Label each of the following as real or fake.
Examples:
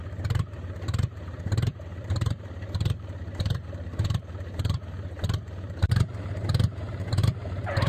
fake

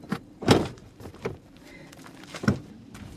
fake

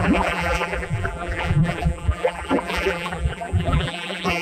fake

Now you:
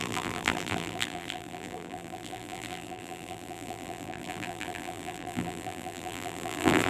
fake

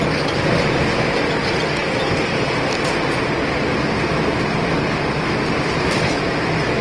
real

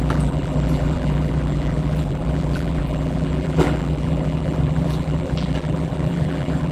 fake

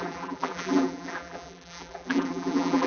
fake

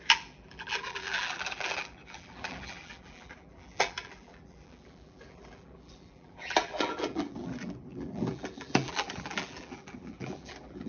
fake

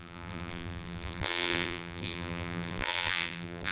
fake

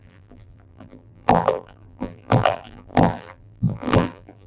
fake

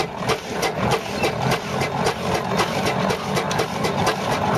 real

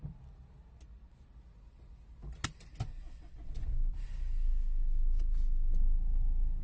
real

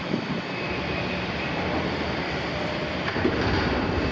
fake